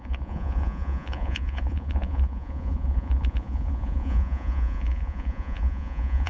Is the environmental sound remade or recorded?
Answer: remade